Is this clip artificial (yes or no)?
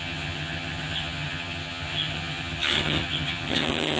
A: yes